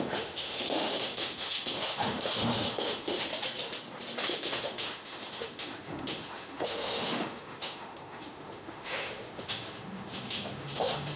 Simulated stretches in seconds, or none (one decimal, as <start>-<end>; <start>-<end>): 0.0-3.3; 4.2-11.2